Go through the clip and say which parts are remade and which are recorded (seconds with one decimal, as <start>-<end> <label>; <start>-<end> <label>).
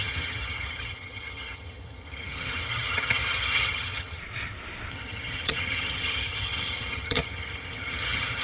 0.0-4.2 remade; 4.2-4.9 recorded; 4.9-8.4 remade